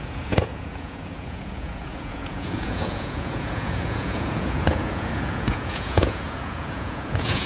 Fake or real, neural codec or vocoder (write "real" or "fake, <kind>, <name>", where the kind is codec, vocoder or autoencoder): fake, vocoder, Vocos